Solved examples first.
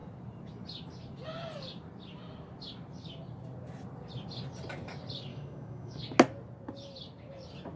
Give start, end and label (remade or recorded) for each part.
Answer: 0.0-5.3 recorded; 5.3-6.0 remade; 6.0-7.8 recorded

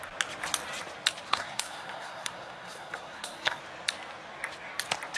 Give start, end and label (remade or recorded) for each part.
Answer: 0.0-1.3 recorded; 1.3-3.6 remade; 3.6-5.2 recorded

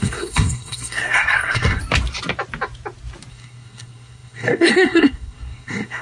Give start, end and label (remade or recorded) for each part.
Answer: 0.0-1.8 remade; 1.8-3.3 recorded; 3.3-6.0 remade

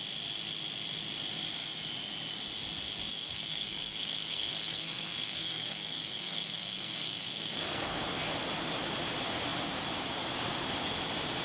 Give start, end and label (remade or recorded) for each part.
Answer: 0.0-3.1 recorded; 3.1-8.0 remade; 8.0-11.4 recorded

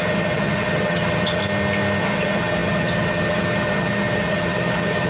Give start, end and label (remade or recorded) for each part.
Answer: 0.0-1.4 remade; 1.4-2.0 recorded; 2.0-5.1 remade

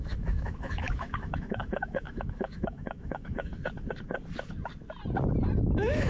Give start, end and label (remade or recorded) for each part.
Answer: 0.0-3.5 remade; 3.5-5.6 recorded; 5.6-6.1 remade

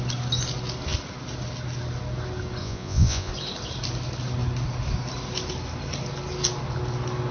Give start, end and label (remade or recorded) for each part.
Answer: 0.0-2.6 recorded; 2.6-3.3 remade; 3.3-7.3 recorded